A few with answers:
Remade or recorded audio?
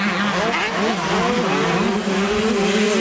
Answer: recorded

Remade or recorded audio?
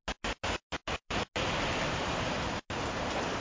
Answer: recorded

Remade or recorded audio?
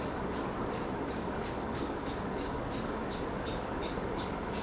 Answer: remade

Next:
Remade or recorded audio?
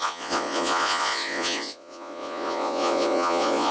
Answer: remade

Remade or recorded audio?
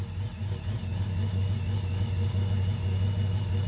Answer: recorded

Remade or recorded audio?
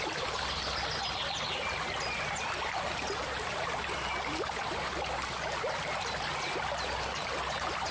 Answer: recorded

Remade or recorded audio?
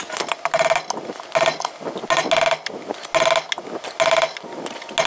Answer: recorded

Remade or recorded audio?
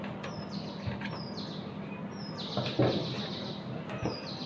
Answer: recorded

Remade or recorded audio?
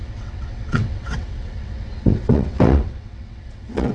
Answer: remade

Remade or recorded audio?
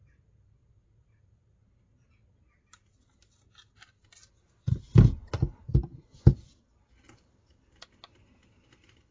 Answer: recorded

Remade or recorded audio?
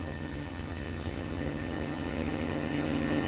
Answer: remade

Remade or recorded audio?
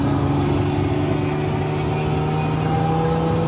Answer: recorded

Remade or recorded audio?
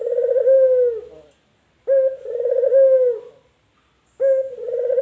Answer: recorded